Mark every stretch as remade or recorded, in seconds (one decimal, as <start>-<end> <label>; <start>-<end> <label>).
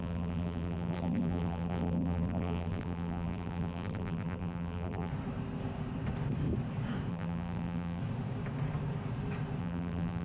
0.0-5.1 remade; 5.1-7.1 recorded; 7.1-8.0 remade; 8.0-9.6 recorded; 9.6-10.2 remade